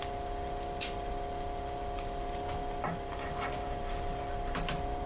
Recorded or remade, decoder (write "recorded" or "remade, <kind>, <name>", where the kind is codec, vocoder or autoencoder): recorded